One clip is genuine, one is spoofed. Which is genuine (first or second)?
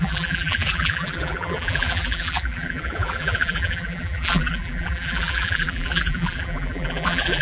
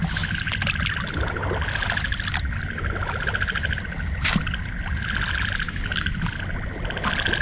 second